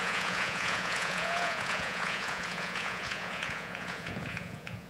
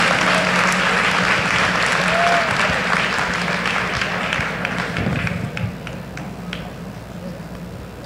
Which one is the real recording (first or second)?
second